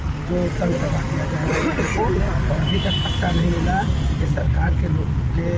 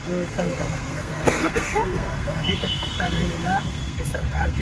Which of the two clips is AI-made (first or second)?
second